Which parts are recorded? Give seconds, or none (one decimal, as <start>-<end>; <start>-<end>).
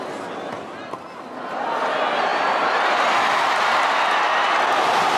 0.0-2.3; 2.8-5.2